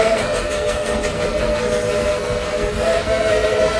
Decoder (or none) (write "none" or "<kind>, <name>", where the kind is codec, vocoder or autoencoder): codec, SNAC